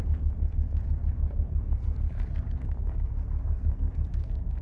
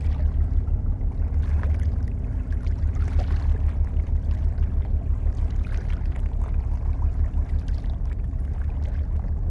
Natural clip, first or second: second